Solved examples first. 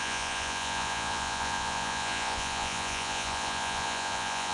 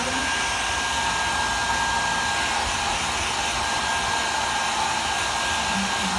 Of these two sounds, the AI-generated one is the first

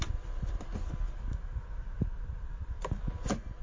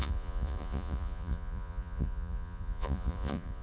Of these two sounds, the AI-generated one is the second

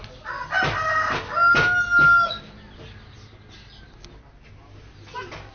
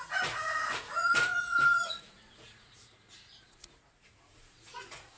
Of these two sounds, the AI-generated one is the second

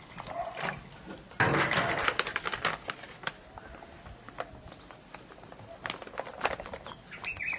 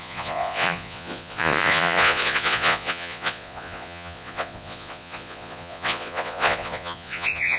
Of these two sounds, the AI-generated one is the second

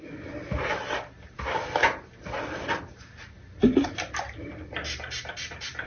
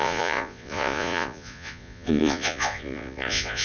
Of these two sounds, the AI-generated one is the second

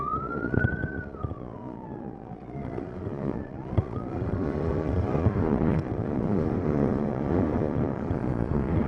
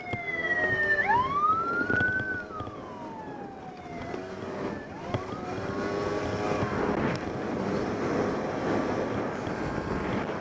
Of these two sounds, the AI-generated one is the first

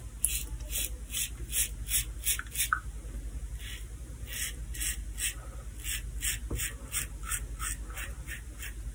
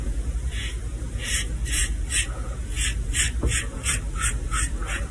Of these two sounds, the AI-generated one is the second